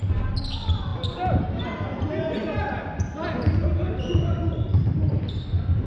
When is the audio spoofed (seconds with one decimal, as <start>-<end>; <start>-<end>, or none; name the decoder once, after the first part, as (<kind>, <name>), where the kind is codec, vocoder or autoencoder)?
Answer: none